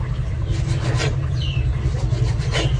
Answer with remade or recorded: recorded